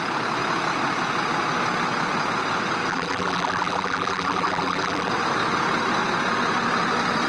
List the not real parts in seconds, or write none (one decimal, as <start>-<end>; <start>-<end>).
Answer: 2.9-5.1